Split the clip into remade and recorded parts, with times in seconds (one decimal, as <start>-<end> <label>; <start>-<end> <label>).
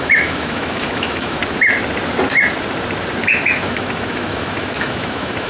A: 0.0-1.4 remade; 1.4-3.2 recorded; 3.2-5.5 remade